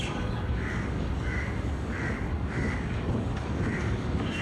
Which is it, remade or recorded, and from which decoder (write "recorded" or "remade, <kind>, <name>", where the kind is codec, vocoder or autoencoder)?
remade, codec, DAC